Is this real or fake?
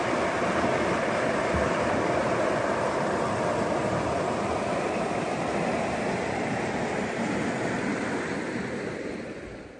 real